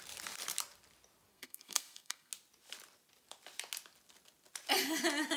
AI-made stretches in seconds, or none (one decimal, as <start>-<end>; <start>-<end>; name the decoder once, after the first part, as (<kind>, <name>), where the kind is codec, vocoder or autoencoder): 1.3-2.3 (codec, SNAC)